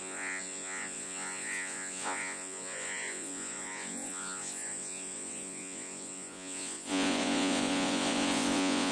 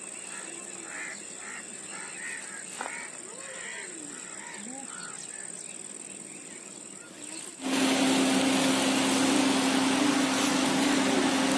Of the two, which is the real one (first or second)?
second